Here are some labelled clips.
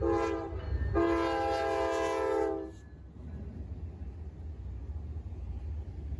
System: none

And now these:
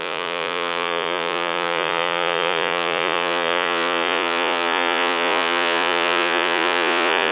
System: vocoder, Vocos